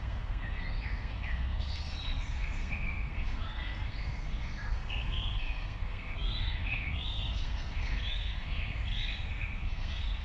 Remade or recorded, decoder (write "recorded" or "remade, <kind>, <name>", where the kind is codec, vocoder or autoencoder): remade, codec, SNAC